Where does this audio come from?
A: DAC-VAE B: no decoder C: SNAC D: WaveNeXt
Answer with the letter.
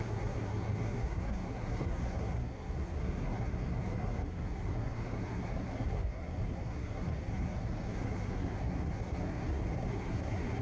C